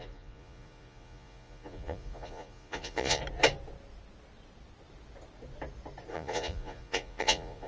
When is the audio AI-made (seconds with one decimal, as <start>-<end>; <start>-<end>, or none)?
0.0-3.2; 6.1-7.7